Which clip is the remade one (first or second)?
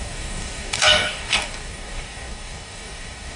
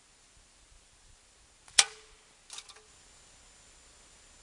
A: first